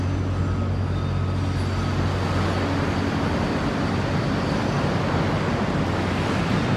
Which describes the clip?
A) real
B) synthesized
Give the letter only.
A